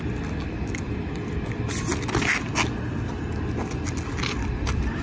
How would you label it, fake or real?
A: real